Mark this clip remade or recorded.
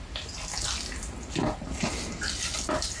recorded